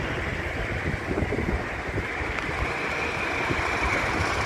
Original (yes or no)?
yes